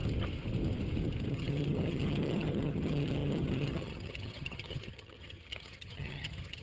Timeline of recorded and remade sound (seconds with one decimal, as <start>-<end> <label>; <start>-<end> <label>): 0.0-1.3 recorded; 1.3-6.6 remade